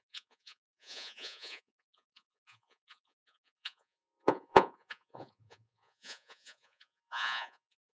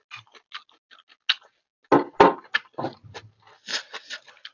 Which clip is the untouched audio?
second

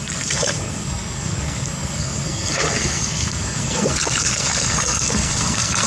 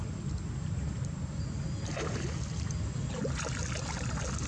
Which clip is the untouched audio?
second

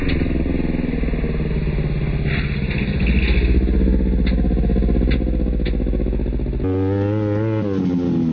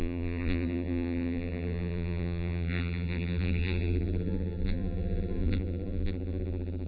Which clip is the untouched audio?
first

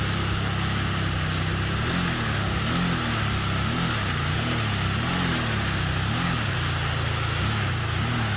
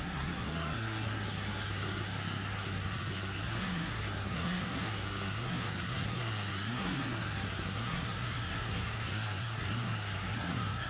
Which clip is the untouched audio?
first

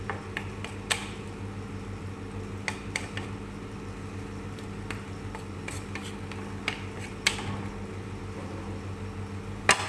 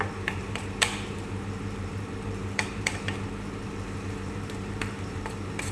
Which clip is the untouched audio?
first